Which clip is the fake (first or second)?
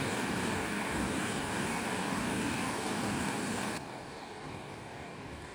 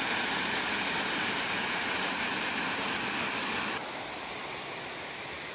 first